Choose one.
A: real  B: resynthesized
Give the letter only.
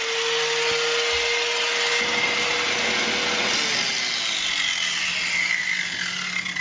A